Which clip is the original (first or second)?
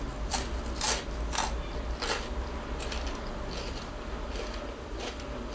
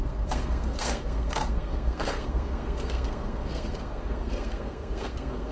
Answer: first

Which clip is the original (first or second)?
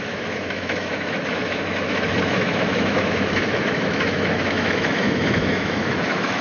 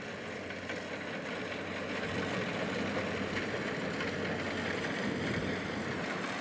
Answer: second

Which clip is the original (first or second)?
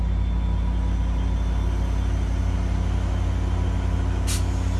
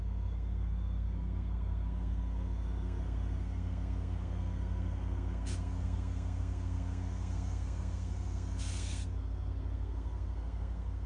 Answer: first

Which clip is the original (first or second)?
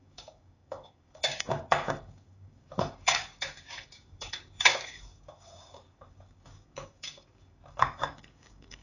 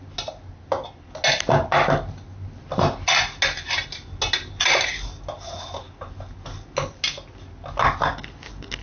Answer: second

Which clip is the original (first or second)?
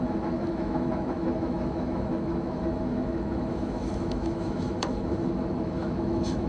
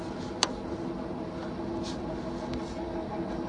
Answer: second